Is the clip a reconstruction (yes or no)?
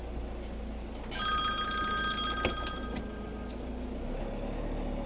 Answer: no